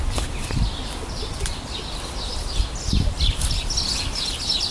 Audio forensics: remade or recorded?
recorded